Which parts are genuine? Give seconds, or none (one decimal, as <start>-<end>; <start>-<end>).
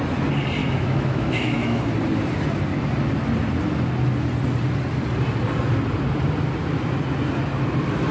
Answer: 0.0-0.6; 1.8-8.1